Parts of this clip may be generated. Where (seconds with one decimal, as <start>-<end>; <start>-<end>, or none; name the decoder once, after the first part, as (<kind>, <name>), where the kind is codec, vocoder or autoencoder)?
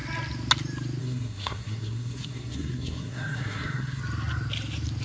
1.0-4.0 (codec, SNAC)